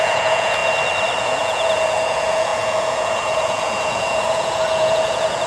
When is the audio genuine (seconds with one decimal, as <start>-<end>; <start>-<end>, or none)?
0.6-1.2